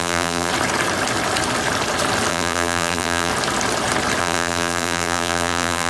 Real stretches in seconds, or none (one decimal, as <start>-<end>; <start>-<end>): 0.5-2.3; 3.3-4.2